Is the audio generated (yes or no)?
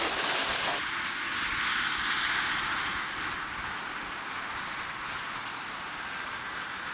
no